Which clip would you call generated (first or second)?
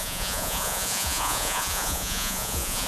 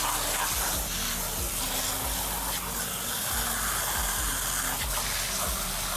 first